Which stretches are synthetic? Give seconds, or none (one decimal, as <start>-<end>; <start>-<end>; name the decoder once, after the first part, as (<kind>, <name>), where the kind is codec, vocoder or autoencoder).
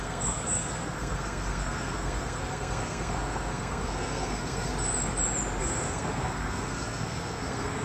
0.0-4.7 (codec, SNAC); 5.6-7.8